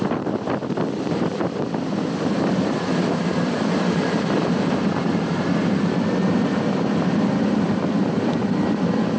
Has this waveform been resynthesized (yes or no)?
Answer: yes